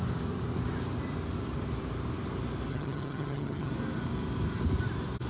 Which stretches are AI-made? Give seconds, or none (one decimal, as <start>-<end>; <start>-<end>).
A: 2.7-3.7